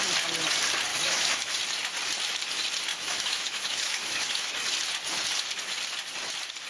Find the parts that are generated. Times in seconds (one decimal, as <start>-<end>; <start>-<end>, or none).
0.9-1.5; 2.9-4.5